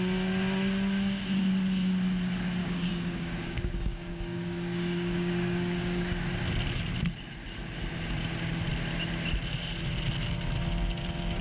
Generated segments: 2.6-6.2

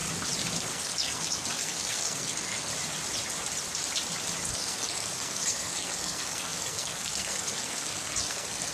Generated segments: 0.6-2.7; 4.5-8.7

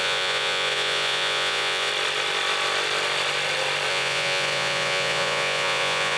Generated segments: 0.0-1.9; 3.9-6.2

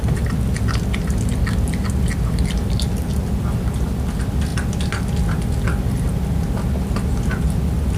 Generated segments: none